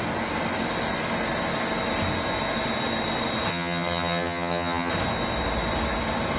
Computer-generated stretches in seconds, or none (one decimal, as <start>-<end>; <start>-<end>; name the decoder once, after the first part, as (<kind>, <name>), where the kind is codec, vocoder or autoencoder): 3.5-4.9 (vocoder, HiFi-GAN)